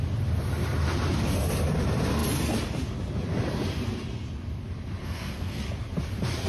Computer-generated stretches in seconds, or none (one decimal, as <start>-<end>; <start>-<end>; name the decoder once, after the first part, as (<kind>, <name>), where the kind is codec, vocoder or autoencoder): 5.0-5.6 (codec, SNAC)